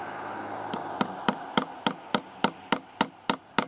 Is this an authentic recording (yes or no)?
yes